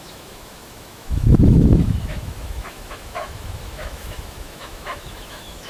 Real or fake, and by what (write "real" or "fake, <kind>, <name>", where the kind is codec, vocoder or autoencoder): fake, autoencoder, DAC-VAE